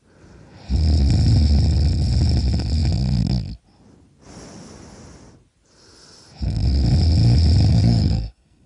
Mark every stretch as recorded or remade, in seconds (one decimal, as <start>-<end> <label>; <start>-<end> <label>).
0.0-7.7 recorded; 7.7-8.7 remade

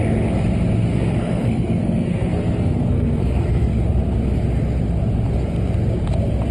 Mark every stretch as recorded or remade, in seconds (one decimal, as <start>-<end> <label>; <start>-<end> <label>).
0.0-0.9 recorded; 0.9-3.9 remade; 3.9-6.5 recorded

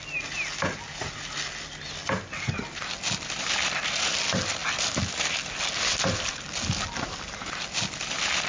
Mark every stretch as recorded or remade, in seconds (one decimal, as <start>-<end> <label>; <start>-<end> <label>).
0.0-8.5 recorded